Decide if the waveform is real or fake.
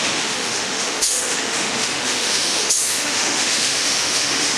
fake